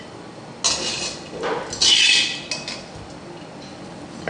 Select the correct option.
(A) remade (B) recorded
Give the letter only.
B